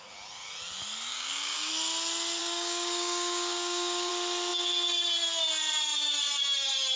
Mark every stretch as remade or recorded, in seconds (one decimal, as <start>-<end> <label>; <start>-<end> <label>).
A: 0.0-1.1 recorded; 1.1-1.7 remade; 1.7-2.4 recorded; 2.4-4.1 remade; 4.1-7.0 recorded